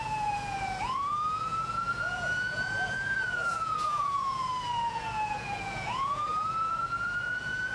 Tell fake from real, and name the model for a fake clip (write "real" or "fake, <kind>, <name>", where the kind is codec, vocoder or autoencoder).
fake, vocoder, Vocos